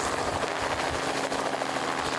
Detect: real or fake real